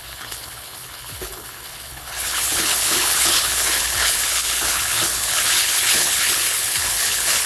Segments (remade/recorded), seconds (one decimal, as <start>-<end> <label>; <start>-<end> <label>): 0.0-7.5 remade